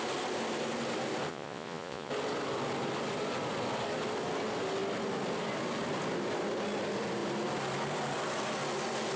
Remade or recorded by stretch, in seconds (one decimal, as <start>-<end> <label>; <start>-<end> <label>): 0.0-1.3 recorded; 1.3-2.1 remade; 2.1-9.2 recorded